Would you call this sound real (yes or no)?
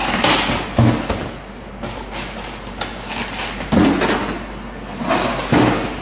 yes